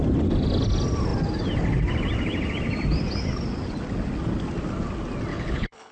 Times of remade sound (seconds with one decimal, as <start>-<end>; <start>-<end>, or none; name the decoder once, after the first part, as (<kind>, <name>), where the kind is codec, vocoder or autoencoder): 5.3-5.9 (codec, HILCodec)